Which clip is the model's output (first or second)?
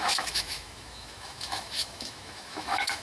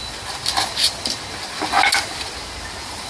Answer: first